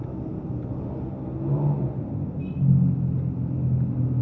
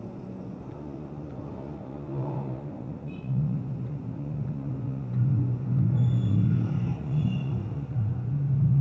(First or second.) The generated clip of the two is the second